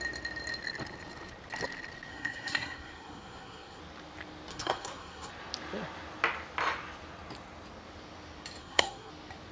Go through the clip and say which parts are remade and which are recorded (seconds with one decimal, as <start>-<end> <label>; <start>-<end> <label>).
0.0-2.1 recorded; 2.1-3.8 remade; 3.8-4.5 recorded; 4.5-5.3 remade; 5.3-8.6 recorded; 8.6-9.1 remade; 9.1-9.5 recorded